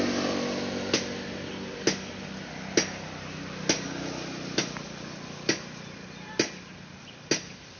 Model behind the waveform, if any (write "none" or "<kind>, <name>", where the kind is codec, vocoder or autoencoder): none